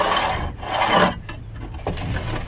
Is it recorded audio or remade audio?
recorded